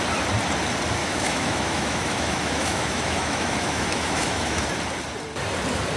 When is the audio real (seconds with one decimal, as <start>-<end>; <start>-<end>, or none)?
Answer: 0.0-1.0; 4.6-6.0